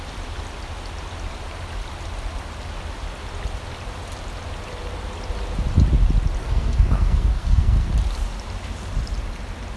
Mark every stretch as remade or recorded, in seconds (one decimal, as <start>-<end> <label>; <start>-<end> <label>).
0.0-6.4 recorded; 6.4-7.9 remade; 7.9-9.8 recorded